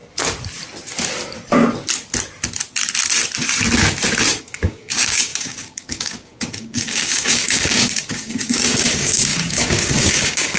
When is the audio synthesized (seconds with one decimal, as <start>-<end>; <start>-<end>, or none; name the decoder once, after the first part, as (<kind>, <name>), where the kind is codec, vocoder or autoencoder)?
4.4-10.6 (codec, DAC)